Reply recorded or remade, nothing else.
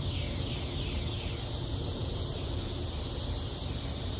recorded